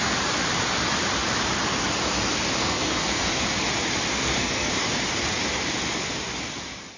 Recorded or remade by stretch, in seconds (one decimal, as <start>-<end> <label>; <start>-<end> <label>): 0.0-2.6 recorded; 2.6-3.3 remade; 3.3-4.1 recorded; 4.1-4.7 remade; 4.7-7.0 recorded